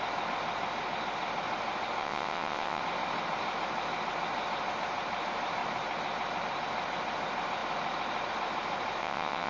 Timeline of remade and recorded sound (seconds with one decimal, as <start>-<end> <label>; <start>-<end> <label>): 0.0-2.0 recorded; 2.0-2.8 remade; 2.8-9.0 recorded; 9.0-9.5 remade